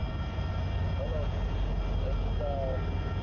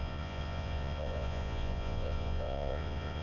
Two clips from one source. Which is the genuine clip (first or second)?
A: first